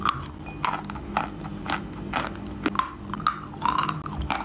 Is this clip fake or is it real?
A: real